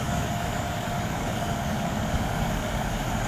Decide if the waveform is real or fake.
fake